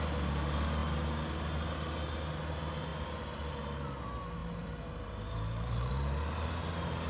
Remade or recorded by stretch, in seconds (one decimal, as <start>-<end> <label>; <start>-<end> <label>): 0.0-4.4 recorded; 4.4-5.9 remade; 5.9-7.1 recorded

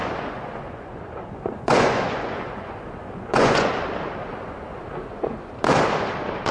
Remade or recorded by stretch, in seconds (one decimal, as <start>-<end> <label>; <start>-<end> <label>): 0.0-3.7 remade; 3.7-4.3 recorded; 4.3-5.5 remade; 5.5-6.5 recorded

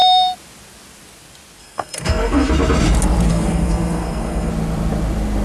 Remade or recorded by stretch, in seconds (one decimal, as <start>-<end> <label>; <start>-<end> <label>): 0.0-1.6 recorded; 1.6-2.5 remade; 2.5-3.3 recorded; 3.3-4.5 remade; 4.5-5.4 recorded

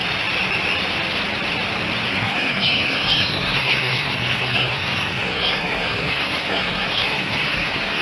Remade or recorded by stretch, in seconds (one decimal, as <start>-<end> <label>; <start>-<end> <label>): 0.0-2.1 recorded; 2.1-8.0 remade

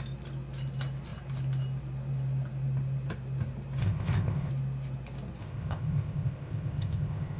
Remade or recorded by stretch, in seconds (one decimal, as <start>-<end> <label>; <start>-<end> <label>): 0.0-3.8 recorded; 3.8-4.5 remade; 4.5-5.4 recorded; 5.4-7.4 remade

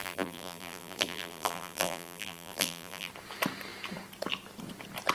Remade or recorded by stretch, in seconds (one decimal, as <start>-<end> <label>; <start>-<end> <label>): 0.0-3.1 remade; 3.1-5.1 recorded

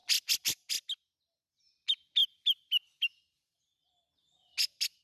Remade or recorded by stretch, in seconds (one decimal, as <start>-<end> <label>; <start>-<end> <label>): 0.0-5.0 recorded